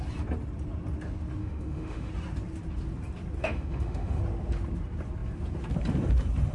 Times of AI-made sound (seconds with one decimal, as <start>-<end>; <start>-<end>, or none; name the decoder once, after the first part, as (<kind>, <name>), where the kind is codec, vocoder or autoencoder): 1.4-2.1 (autoencoder, DAC-VAE); 3.4-4.2